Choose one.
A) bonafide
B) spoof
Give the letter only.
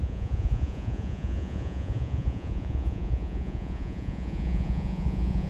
B